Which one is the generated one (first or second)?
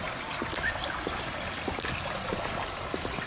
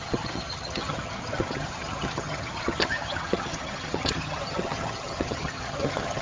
second